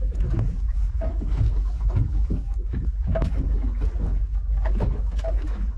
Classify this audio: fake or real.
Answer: fake